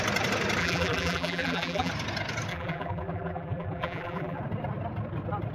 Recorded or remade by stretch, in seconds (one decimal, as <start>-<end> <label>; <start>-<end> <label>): 0.0-0.6 recorded; 0.6-1.9 remade; 1.9-2.5 recorded; 2.5-4.4 remade; 4.4-5.5 recorded